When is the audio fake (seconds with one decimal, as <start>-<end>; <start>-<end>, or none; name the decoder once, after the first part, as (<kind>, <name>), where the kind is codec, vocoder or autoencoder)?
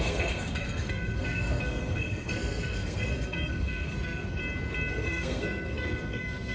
0.0-4.4 (codec, SNAC); 4.9-6.5